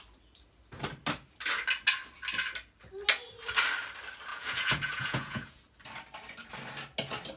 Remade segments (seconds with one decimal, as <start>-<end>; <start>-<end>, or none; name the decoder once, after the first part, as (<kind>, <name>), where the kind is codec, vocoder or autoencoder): 4.3-5.6 (vocoder, Vocos)